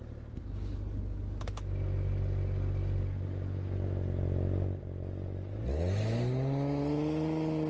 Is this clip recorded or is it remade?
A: recorded